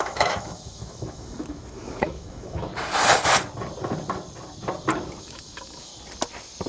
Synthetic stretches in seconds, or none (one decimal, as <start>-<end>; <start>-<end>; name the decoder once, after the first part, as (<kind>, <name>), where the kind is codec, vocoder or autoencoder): 0.0-2.7 (autoencoder, DAC-VAE); 5.2-5.9